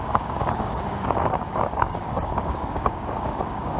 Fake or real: fake